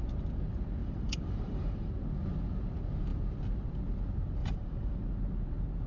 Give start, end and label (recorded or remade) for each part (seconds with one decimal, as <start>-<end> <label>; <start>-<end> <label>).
0.0-0.8 recorded; 0.8-1.9 remade; 1.9-4.4 recorded; 4.4-5.0 remade; 5.0-5.9 recorded